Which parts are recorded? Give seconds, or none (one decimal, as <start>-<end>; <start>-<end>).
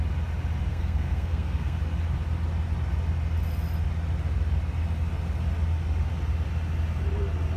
0.0-0.7; 1.8-7.6